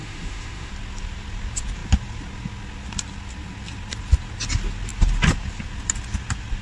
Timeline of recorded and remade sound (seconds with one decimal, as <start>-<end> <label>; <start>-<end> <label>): 0.0-0.7 remade; 0.7-6.6 recorded